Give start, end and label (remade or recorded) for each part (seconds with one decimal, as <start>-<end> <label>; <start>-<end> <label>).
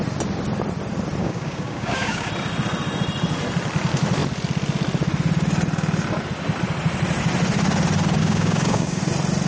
0.0-1.2 recorded; 1.2-2.3 remade; 2.3-8.2 recorded; 8.2-9.0 remade; 9.0-9.5 recorded